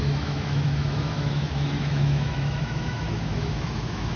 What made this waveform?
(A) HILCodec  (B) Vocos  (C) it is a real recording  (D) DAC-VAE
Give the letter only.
D